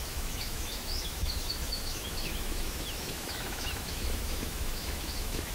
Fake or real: fake